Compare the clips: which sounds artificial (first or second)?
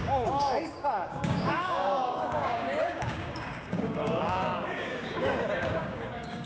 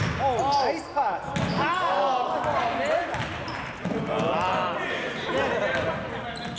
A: first